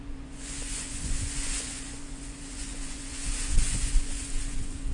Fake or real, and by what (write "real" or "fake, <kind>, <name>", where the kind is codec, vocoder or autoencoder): fake, vocoder, Vocos